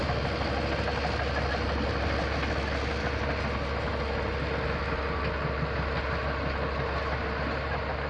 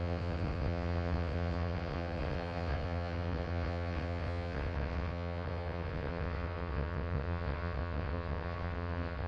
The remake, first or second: second